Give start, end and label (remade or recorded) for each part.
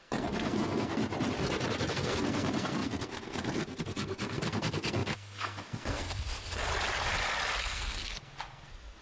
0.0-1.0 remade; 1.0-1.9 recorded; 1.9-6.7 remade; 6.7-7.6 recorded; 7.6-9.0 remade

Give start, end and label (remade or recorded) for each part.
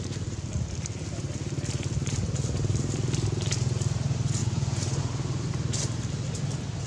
0.0-4.4 recorded; 4.4-5.0 remade; 5.0-6.9 recorded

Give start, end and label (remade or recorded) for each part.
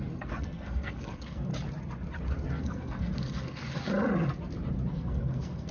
0.0-1.5 remade; 1.5-2.5 recorded; 2.5-3.8 remade; 3.8-4.9 recorded; 4.9-5.7 remade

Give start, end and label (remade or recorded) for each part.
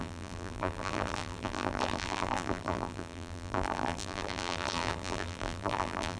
0.0-6.2 remade